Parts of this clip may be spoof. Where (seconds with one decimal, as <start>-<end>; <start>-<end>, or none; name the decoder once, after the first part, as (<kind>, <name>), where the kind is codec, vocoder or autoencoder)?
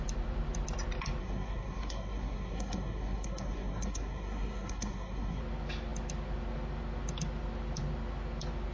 1.2-5.4 (codec, SNAC)